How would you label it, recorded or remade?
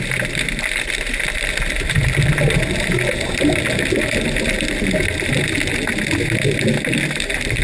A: recorded